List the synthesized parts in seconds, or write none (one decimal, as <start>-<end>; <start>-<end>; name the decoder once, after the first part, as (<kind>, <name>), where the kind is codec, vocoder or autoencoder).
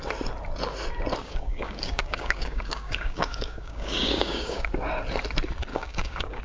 1.2-4.7 (codec, DAC); 5.7-6.4